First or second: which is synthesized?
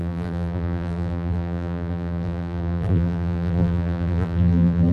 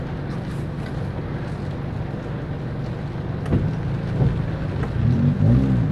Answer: first